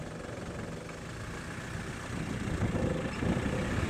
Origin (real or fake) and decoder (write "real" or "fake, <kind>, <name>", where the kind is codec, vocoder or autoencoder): real